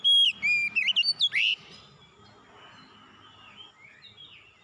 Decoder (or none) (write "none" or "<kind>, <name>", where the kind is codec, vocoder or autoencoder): none